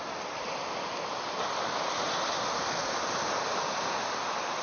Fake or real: real